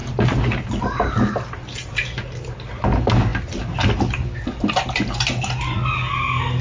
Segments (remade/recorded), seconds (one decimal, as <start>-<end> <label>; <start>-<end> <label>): 0.0-6.6 recorded